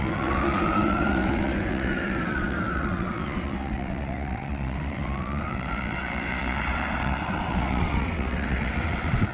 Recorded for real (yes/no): no